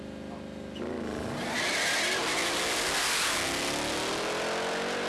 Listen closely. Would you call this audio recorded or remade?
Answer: recorded